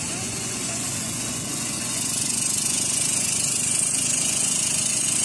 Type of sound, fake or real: fake